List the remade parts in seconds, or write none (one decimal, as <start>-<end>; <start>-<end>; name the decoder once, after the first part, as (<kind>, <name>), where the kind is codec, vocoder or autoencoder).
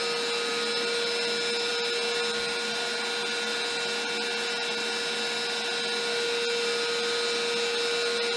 none